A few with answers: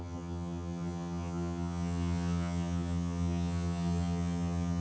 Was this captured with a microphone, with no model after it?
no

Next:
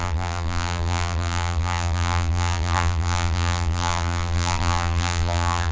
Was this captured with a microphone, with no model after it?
no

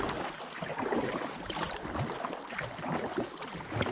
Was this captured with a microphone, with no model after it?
yes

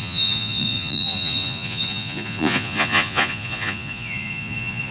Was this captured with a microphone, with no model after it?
no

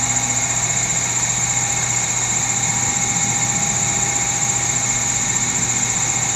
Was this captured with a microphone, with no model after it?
yes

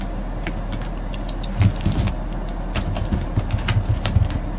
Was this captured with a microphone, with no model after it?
yes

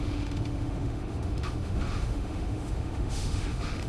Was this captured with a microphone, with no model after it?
no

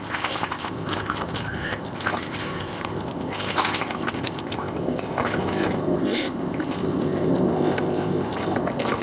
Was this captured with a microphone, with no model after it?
no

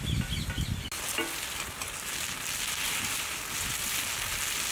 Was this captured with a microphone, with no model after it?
yes